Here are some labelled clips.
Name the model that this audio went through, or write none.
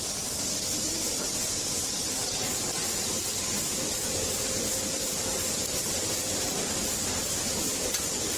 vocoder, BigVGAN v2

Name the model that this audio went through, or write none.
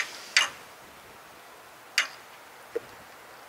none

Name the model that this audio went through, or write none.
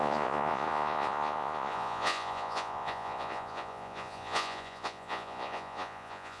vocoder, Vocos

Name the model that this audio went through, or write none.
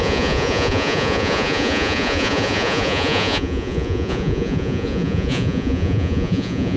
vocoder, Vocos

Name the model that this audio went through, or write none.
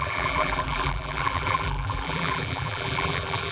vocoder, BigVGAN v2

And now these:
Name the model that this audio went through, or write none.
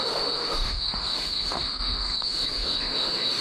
autoencoder, DAC-VAE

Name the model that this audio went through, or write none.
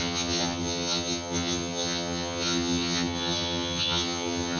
vocoder, HiFi-GAN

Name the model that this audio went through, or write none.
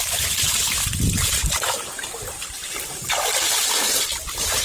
vocoder, BigVGAN v2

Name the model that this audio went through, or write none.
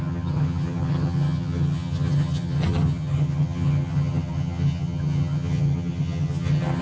vocoder, HiFi-GAN